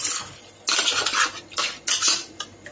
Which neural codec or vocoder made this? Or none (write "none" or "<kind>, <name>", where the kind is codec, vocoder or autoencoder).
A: none